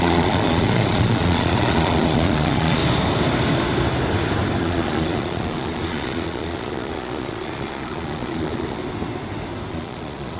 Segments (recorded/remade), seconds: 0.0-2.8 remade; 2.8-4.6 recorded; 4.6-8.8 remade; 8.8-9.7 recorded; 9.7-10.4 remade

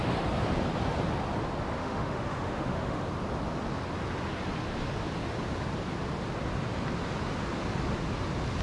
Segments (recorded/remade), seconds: 0.0-1.8 recorded; 1.8-3.0 remade; 3.0-8.6 recorded